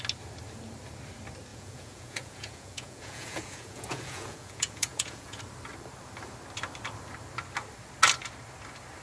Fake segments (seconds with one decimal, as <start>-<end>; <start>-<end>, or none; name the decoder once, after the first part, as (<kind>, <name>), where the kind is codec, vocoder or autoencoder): 1.5-5.4 (vocoder, Vocos)